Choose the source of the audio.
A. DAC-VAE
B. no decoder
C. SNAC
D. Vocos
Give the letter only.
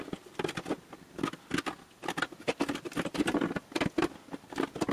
B